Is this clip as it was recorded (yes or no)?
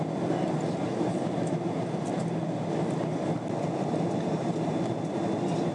yes